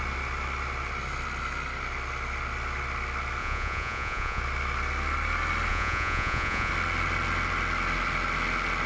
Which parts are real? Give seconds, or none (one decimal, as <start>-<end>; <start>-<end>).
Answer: 0.0-3.4; 4.4-5.7; 6.7-8.9